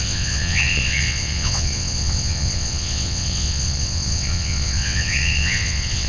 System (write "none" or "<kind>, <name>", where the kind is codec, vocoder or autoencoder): vocoder, WaveNeXt